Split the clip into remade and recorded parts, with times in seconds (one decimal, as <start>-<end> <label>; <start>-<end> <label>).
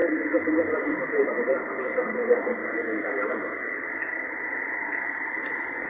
0.0-2.6 remade; 2.6-3.3 recorded; 3.3-5.9 remade